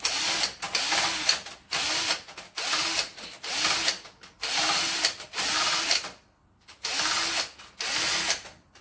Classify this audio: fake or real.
real